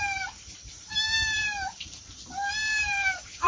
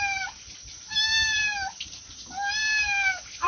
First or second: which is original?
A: second